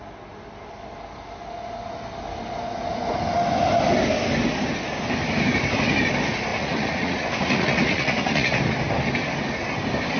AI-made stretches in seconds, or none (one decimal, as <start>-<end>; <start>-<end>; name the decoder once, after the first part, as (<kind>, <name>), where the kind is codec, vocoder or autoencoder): 6.5-8.6 (vocoder, Vocos)

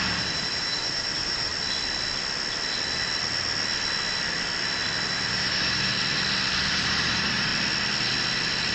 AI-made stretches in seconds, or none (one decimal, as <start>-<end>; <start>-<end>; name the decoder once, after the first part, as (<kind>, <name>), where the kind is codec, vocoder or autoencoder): 0.0-1.5 (vocoder, BigVGAN v2); 5.3-5.9; 6.7-7.5

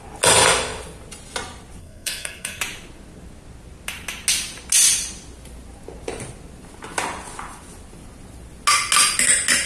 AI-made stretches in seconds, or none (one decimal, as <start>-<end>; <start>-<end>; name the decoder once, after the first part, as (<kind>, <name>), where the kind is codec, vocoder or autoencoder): 1.8-2.6 (codec, SNAC)

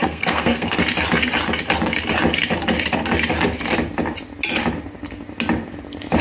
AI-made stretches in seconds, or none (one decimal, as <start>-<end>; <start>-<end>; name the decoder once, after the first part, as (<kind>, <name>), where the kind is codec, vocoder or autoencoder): 0.0-0.8 (codec, SNAC)